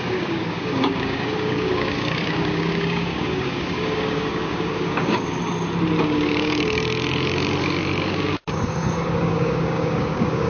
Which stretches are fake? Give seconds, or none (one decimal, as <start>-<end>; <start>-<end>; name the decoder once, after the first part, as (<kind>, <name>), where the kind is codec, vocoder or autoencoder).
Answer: 0.0-5.5 (codec, DAC); 6.0-10.5